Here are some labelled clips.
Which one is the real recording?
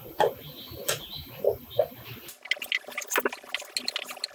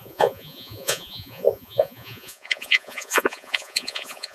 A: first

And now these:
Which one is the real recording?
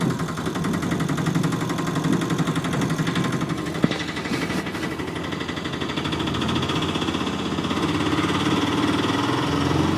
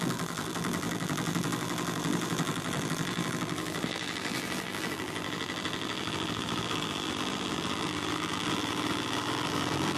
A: first